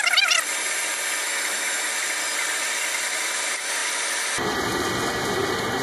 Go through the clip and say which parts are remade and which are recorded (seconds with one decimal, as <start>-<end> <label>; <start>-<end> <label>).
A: 0.0-1.2 recorded; 1.2-1.9 remade; 1.9-5.8 recorded